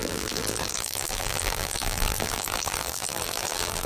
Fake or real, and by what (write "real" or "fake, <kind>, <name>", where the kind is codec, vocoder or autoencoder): fake, vocoder, BigVGAN v2